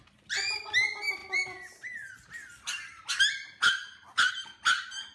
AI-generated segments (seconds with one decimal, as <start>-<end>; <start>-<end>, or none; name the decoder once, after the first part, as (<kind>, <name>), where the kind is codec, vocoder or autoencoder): none